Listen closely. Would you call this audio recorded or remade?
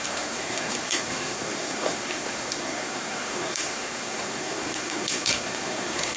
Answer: remade